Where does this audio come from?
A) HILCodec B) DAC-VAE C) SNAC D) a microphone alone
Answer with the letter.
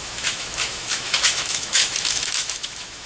B